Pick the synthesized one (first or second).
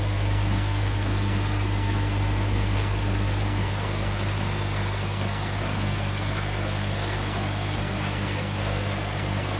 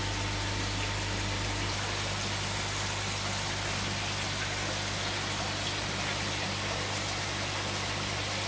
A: first